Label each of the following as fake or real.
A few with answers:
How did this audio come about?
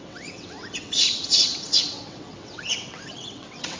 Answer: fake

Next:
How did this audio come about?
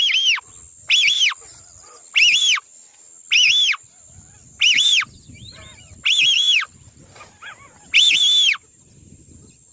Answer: real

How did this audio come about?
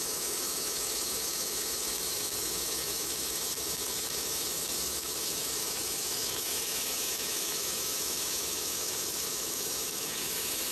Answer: fake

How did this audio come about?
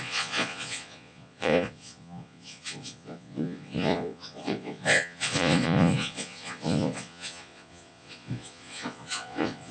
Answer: fake